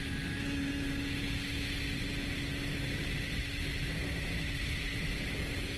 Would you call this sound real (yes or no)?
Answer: yes